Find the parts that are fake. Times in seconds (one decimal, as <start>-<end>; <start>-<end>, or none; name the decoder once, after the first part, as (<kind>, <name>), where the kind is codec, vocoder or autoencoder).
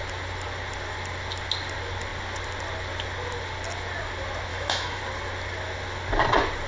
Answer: 4.5-5.0 (autoencoder, DAC-VAE)